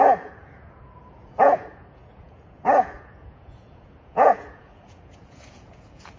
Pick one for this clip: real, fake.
fake